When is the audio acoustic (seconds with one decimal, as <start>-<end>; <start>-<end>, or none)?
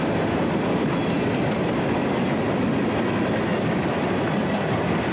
0.0-5.1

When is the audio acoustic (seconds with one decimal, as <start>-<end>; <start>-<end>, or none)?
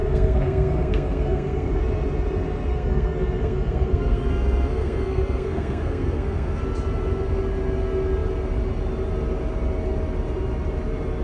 1.8-2.7; 6.6-11.2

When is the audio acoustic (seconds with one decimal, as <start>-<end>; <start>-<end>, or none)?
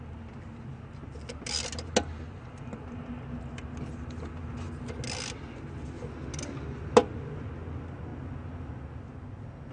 0.0-9.7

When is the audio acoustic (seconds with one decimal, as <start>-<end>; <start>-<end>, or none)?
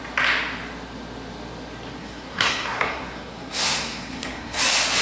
0.0-2.0; 4.6-5.0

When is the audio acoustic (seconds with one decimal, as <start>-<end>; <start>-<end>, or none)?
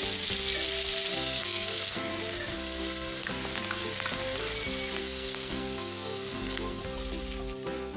0.0-1.1; 2.1-2.5; 3.3-5.0; 6.8-8.0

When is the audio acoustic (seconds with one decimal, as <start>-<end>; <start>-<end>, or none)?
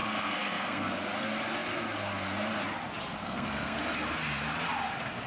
0.9-3.2; 3.8-5.3